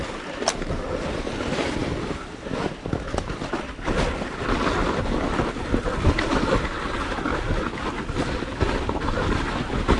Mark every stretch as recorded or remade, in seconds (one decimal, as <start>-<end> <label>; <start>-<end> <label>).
0.0-1.8 recorded; 1.8-6.5 remade; 6.5-10.0 recorded